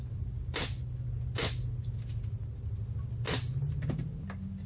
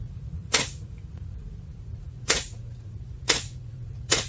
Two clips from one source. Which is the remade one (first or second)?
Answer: second